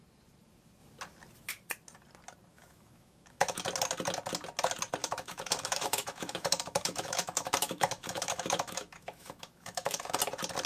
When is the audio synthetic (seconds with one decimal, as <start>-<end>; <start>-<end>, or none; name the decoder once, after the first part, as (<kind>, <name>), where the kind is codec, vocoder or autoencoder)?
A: 2.5-3.6 (autoencoder, DAC-VAE); 5.0-10.2